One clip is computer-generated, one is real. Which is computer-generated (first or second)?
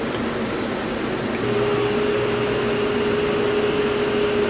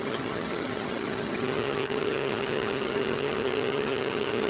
second